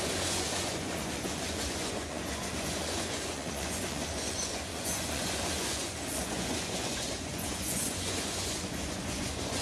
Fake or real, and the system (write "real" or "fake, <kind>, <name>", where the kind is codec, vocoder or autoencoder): fake, vocoder, Vocos